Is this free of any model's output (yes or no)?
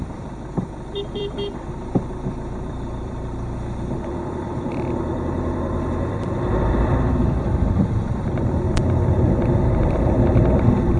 no